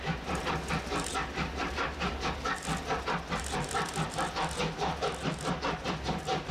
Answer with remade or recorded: recorded